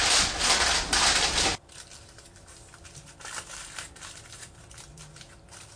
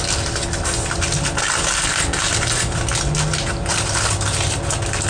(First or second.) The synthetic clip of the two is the first